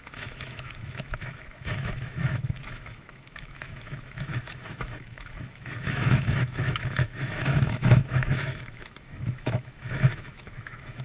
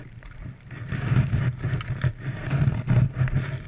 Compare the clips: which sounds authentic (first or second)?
second